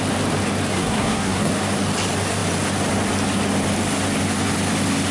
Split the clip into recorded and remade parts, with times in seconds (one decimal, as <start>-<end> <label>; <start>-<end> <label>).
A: 0.0-0.7 recorded; 0.7-1.5 remade; 1.5-5.1 recorded

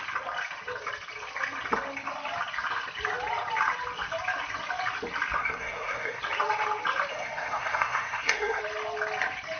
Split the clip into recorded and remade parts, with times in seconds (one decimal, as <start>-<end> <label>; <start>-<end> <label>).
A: 0.0-5.4 recorded; 5.4-6.2 remade; 6.2-7.1 recorded; 7.1-8.6 remade; 8.6-9.6 recorded